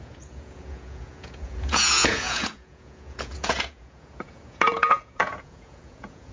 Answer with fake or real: fake